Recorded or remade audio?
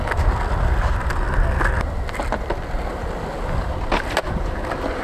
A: recorded